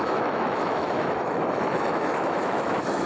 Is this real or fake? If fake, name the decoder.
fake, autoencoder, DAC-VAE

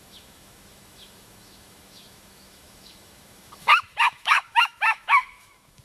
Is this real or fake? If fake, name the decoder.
fake, autoencoder, DAC-VAE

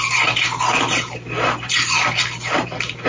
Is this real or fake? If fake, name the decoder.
real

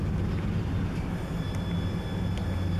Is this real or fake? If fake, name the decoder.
real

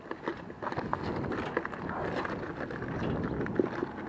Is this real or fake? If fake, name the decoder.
real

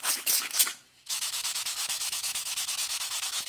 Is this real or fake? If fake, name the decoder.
fake, autoencoder, DAC-VAE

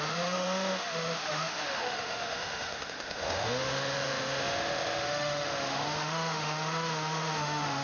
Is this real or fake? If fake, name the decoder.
fake, autoencoder, DAC-VAE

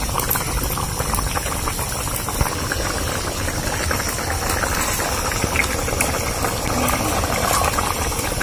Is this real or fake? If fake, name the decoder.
real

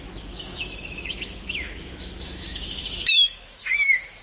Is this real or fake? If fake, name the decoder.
fake, autoencoder, DAC-VAE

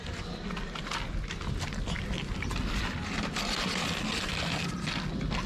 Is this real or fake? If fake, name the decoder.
real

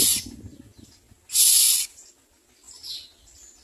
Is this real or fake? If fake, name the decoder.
real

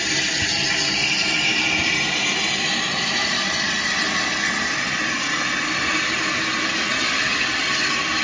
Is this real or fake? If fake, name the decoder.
real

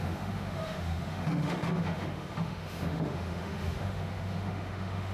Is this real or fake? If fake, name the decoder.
fake, autoencoder, DAC-VAE